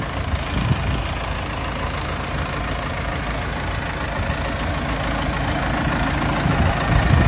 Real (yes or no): yes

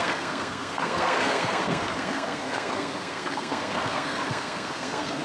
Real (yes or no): no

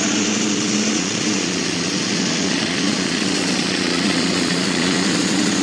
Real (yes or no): no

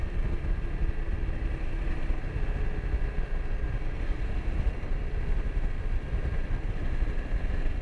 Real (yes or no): yes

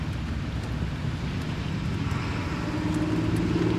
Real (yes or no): yes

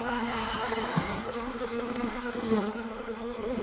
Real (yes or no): no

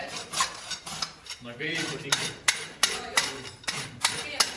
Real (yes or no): no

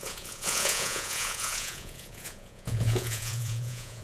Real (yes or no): no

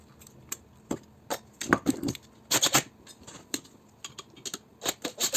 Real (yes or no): yes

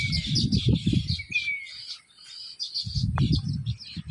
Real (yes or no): yes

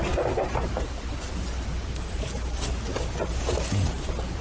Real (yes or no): yes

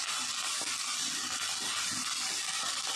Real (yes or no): yes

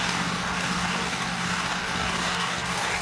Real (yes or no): no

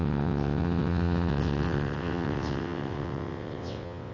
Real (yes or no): no